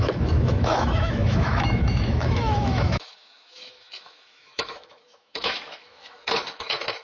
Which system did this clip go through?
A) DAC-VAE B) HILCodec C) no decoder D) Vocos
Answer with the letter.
A